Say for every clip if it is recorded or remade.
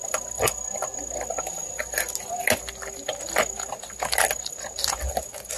recorded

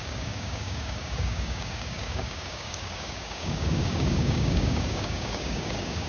remade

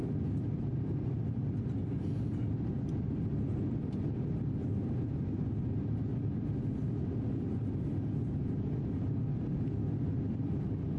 recorded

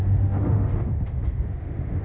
remade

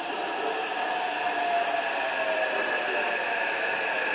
recorded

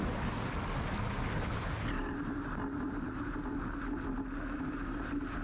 recorded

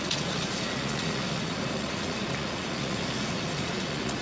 remade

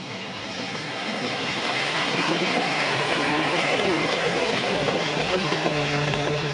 remade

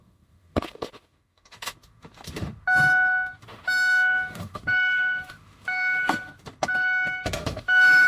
remade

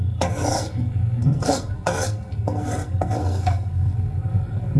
remade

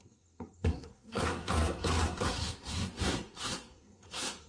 remade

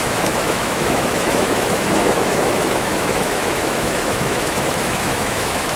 remade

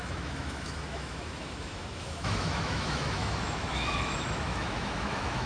remade